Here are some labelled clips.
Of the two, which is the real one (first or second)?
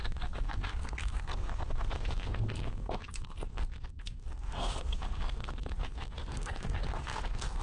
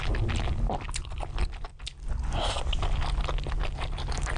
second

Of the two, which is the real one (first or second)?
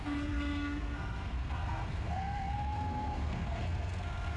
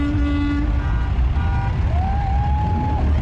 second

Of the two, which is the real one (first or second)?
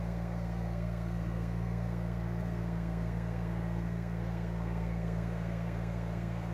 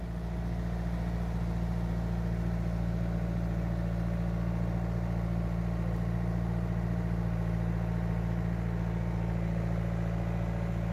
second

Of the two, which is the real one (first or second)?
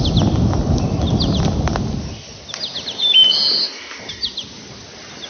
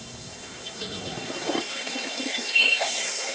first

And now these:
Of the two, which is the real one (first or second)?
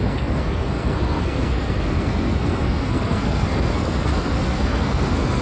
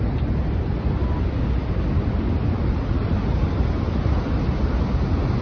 second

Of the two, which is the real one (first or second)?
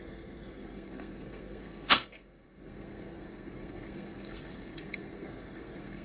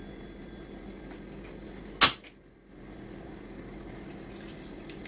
second